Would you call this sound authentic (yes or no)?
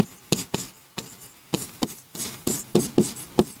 yes